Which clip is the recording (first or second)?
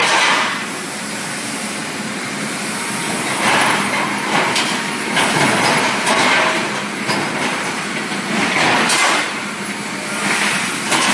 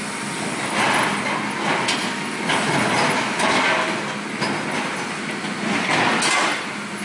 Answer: second